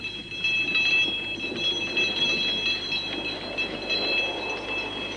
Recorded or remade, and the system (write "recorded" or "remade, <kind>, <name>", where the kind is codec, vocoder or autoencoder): recorded